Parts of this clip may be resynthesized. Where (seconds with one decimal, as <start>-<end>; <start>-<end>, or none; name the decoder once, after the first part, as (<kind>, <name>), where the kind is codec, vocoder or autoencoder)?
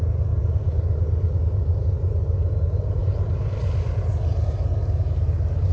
3.0-3.6 (vocoder, BigVGAN v2)